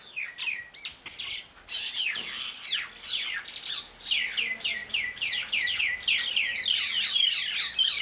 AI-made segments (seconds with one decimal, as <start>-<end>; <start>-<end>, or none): 4.8-5.8